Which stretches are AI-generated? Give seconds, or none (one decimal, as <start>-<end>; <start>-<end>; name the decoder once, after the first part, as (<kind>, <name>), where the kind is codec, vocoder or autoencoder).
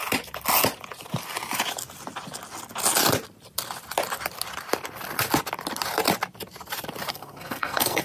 7.1-8.0 (codec, SNAC)